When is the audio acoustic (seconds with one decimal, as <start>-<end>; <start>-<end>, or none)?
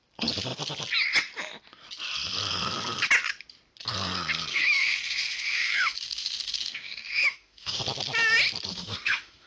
0.0-4.5; 7.8-8.7